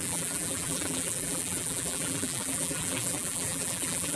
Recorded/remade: remade